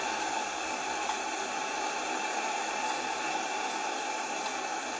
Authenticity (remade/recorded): recorded